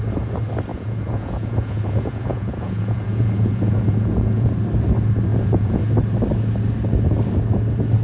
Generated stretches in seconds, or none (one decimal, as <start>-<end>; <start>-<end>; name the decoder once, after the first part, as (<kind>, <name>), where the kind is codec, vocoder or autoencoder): 0.7-4.5 (vocoder, Vocos); 5.3-5.8